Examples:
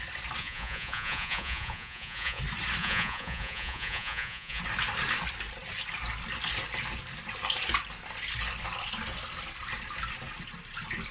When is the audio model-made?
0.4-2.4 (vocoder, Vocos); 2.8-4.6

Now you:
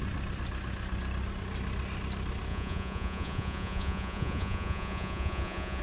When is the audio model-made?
2.5-5.8 (vocoder, Vocos)

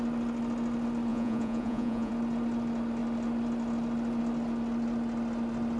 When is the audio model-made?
1.1-2.1 (vocoder, Vocos)

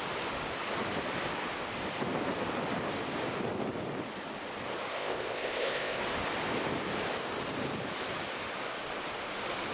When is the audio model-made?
4.9-6.0 (codec, ZipCodec)